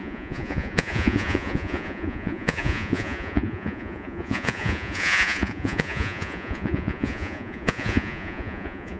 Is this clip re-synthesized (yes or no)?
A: yes